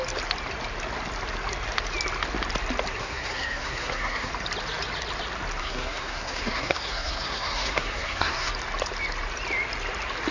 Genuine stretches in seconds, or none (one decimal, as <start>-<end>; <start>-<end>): 0.0-3.0; 4.3-5.6; 8.5-10.3